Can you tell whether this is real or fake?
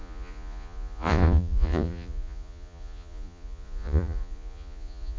fake